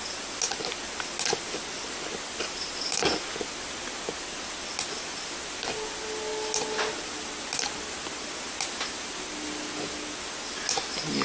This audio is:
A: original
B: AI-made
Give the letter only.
A